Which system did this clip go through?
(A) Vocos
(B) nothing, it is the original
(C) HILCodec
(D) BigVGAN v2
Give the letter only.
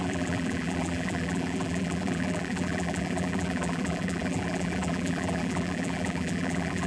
D